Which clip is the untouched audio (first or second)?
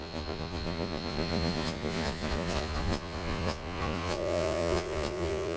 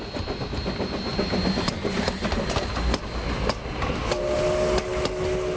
second